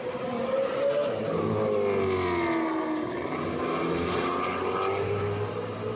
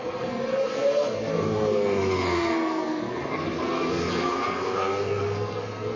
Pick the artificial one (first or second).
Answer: second